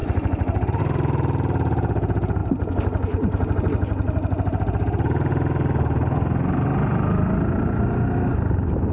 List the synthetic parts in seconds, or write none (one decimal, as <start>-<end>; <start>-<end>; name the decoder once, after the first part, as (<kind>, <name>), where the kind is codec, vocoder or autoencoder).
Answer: 2.4-5.3 (vocoder, BigVGAN v2); 6.7-7.6